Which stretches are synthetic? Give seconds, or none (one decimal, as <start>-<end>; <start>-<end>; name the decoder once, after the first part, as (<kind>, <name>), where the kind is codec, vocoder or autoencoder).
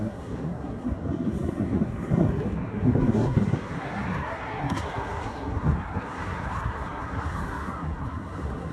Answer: 0.0-8.7 (codec, SNAC)